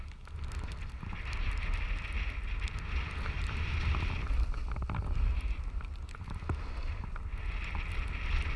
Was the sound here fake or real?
real